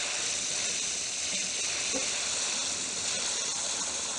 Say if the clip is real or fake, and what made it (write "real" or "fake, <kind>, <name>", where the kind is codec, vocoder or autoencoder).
real